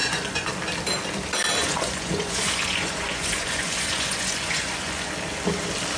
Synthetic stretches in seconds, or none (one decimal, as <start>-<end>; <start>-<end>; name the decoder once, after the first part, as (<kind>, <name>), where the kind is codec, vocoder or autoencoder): 0.0-0.5 (vocoder, Vocos); 1.6-5.1